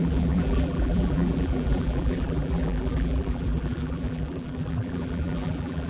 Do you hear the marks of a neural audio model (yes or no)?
yes